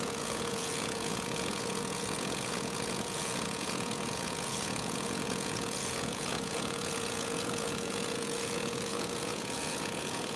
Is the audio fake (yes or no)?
yes